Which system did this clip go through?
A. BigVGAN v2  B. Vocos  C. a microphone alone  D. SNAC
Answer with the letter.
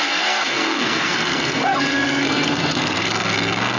D